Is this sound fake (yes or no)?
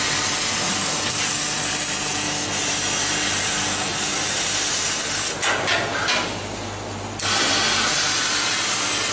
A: no